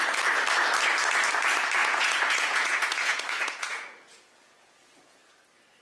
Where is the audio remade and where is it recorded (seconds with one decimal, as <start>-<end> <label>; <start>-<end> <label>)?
0.0-1.8 recorded; 1.8-5.3 remade; 5.3-5.8 recorded